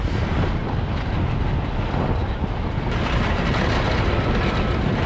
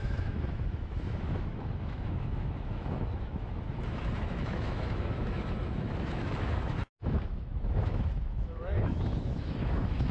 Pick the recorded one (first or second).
first